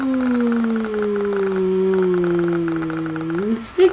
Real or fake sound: real